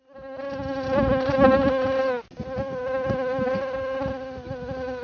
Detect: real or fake real